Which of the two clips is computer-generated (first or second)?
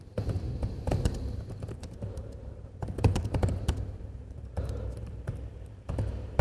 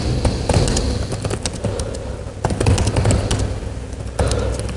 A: first